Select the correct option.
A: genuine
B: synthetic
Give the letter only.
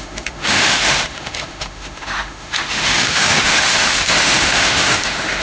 B